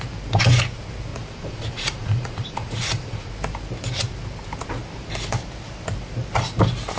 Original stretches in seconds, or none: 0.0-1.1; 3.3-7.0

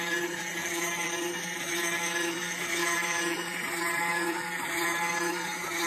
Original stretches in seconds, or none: 0.0-0.6; 1.1-2.8; 3.7-5.9

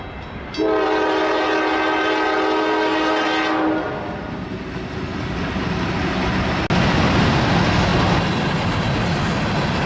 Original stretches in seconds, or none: 0.0-9.9

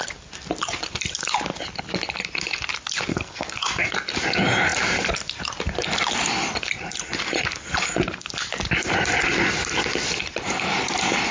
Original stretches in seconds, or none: 0.0-3.1; 3.9-11.3

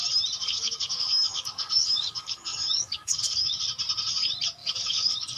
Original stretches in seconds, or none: 0.0-0.4; 3.6-4.6

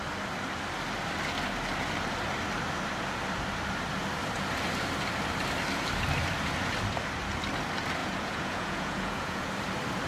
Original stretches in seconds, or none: 0.0-8.0; 9.5-10.1

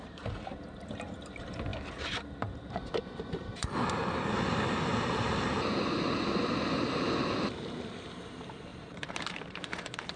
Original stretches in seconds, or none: 4.0-8.2

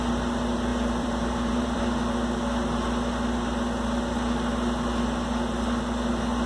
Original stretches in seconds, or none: 0.0-0.7; 1.8-6.5